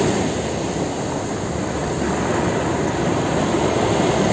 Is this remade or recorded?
recorded